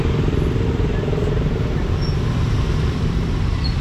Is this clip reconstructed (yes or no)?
yes